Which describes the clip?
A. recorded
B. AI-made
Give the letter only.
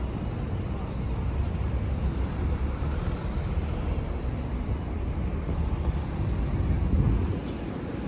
A